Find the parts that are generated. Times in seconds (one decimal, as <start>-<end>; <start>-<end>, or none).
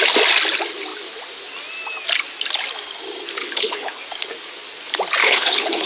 3.4-4.0; 5.2-5.9